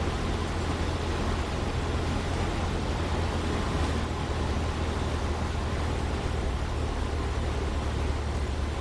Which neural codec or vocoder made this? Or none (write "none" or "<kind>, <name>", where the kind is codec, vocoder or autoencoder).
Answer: none